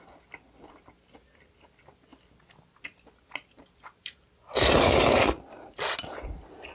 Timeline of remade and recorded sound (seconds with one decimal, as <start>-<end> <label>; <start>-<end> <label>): 0.0-6.7 recorded